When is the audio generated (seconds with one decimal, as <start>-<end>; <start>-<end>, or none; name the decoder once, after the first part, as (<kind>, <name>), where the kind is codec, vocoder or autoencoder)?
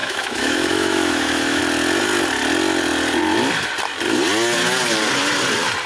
0.0-1.6 (autoencoder, DAC-VAE)